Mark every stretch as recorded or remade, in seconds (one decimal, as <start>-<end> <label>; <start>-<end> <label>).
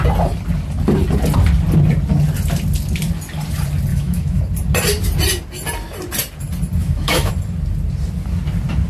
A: 0.0-3.9 recorded; 3.9-4.4 remade; 4.4-6.8 recorded; 6.8-7.3 remade; 7.3-8.9 recorded